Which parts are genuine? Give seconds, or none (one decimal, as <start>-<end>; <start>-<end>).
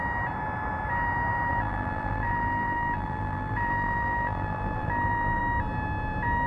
0.0-1.5; 5.4-6.5